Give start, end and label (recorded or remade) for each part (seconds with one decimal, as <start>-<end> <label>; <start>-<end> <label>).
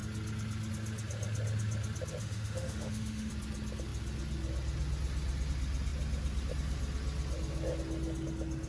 0.0-2.2 recorded; 2.2-3.3 remade; 3.3-8.7 recorded